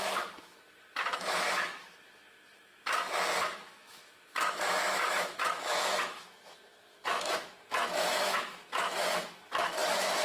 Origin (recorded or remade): remade